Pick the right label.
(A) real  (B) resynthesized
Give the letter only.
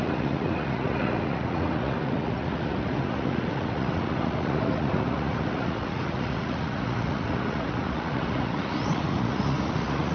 B